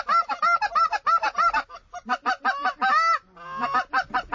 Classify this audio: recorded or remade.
recorded